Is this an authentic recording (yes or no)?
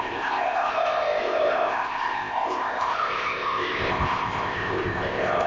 no